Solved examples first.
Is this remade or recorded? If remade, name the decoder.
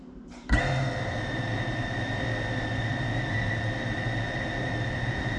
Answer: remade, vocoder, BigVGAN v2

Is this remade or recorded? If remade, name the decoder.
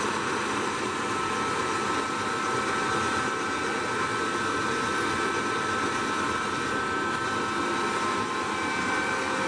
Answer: recorded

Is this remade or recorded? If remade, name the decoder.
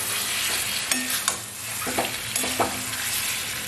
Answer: recorded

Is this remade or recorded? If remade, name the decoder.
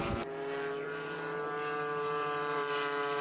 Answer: remade, vocoder, BigVGAN v2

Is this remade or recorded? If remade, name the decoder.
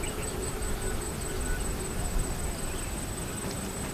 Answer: recorded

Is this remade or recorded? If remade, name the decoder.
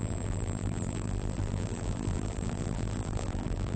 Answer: remade, vocoder, BigVGAN v2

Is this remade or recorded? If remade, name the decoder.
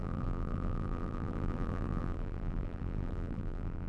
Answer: remade, vocoder, BigVGAN v2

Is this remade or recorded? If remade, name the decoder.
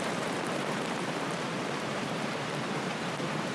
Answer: remade, vocoder, BigVGAN v2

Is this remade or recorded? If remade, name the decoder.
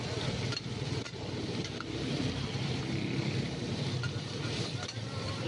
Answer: remade, vocoder, BigVGAN v2